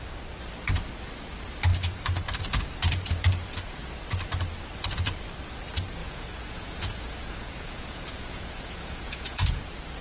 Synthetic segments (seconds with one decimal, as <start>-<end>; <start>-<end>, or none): 6.0-9.6